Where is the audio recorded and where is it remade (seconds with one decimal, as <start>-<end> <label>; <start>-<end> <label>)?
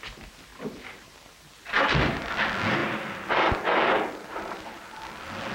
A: 0.0-0.5 recorded; 0.5-1.3 remade; 1.3-4.3 recorded; 4.3-4.8 remade; 4.8-5.5 recorded